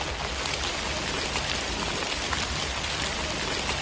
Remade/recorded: recorded